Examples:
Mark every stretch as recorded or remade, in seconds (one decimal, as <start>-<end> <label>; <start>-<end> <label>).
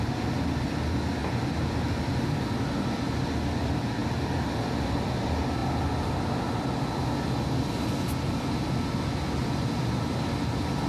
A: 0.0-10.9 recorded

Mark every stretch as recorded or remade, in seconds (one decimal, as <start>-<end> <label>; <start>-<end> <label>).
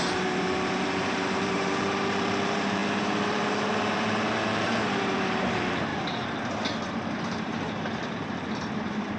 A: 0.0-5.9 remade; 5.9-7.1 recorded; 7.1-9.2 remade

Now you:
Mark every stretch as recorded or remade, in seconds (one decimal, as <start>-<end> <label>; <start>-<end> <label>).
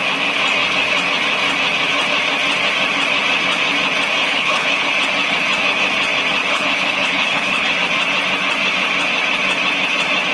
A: 0.0-4.2 recorded; 4.2-4.9 remade; 4.9-6.4 recorded; 6.4-7.8 remade; 7.8-10.3 recorded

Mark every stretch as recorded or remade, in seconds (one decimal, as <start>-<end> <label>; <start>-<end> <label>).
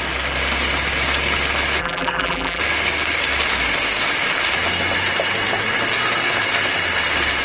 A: 0.0-1.8 recorded; 1.8-2.6 remade; 2.6-7.4 recorded